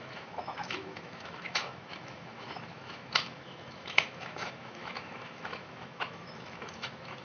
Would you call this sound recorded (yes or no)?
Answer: no